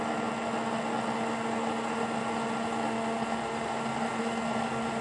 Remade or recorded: recorded